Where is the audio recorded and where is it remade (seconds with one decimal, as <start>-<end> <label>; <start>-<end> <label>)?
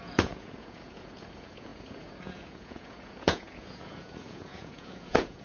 0.0-5.4 remade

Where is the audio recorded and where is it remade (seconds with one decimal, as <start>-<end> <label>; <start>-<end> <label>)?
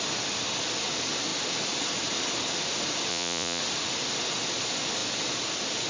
0.0-3.1 recorded; 3.1-3.6 remade; 3.6-5.9 recorded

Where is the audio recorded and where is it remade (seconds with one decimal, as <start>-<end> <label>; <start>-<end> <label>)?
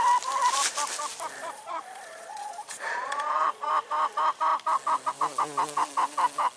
0.0-1.4 recorded; 1.4-3.7 remade; 3.7-6.6 recorded